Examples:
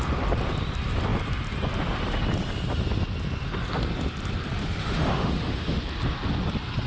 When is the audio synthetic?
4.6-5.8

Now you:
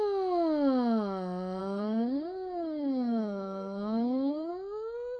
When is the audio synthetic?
1.6-4.5